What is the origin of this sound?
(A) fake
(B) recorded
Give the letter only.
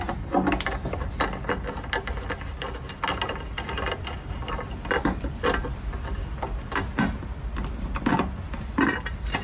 B